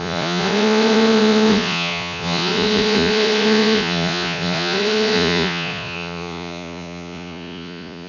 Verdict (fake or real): fake